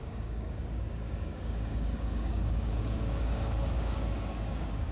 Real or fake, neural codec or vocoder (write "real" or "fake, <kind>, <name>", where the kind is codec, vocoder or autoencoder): fake, codec, DAC